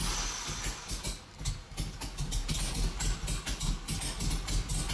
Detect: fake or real real